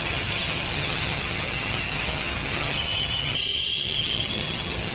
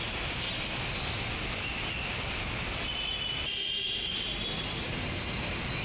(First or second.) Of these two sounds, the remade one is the first